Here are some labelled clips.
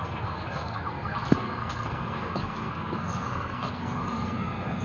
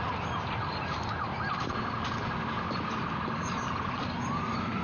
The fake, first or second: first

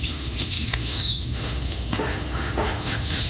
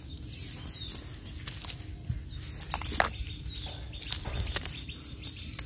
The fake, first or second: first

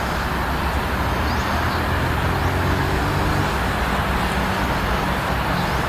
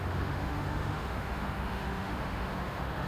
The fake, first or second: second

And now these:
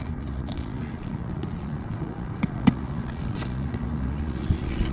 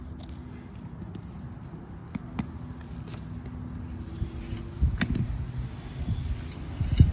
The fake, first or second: first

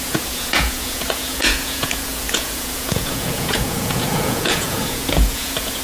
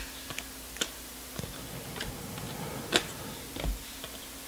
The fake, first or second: first